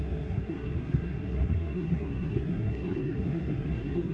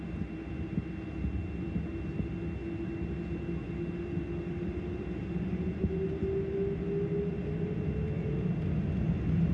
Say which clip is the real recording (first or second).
second